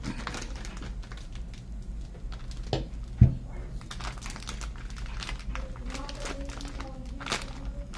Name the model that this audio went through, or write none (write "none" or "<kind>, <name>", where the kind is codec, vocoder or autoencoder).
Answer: none